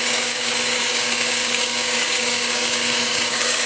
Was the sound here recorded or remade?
remade